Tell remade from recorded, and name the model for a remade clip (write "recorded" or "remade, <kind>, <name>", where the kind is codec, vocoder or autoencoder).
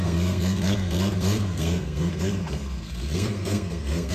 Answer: remade, codec, SNAC